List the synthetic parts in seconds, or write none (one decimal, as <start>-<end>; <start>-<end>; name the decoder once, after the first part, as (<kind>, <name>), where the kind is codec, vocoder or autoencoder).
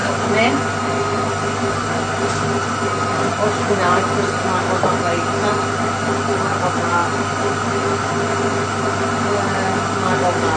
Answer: none